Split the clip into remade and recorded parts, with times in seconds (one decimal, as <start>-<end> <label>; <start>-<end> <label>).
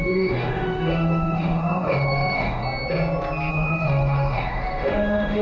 0.0-2.6 remade; 2.6-3.5 recorded; 3.5-5.4 remade